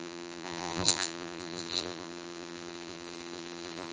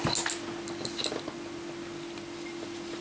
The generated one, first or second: first